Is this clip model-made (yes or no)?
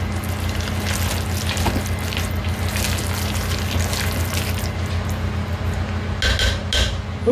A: no